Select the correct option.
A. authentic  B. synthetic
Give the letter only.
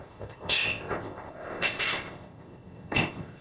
B